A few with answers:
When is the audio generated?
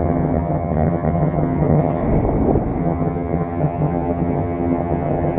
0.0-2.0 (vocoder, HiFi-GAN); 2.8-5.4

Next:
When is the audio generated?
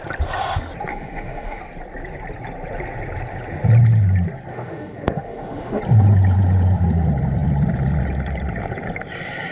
0.9-1.6 (autoencoder, DAC-VAE); 4.5-5.8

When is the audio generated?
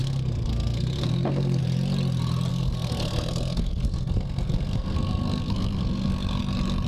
0.0-1.6 (codec, SNAC); 2.5-6.4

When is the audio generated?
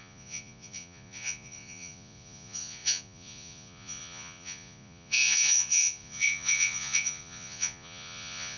0.0-8.6 (vocoder, Vocos)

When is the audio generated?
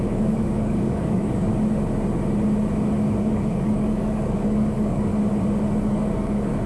0.0-1.5 (codec, DAC); 3.2-5.1; 5.8-6.7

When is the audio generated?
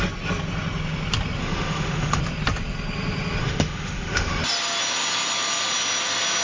1.4-2.2 (autoencoder, DAC-VAE); 3.4-4.4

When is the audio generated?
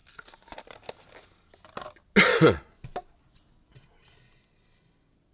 none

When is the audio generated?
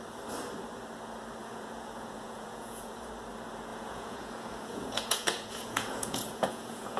1.4-3.1 (vocoder, Vocos); 3.7-7.0